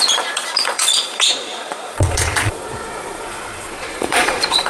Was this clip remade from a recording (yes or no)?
yes